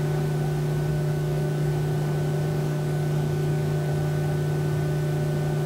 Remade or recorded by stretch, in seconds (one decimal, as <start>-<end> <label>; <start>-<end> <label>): 0.0-0.9 recorded; 0.9-1.7 remade; 1.7-2.5 recorded; 2.5-3.9 remade; 3.9-5.7 recorded